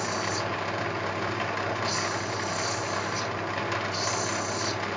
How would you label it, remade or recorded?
recorded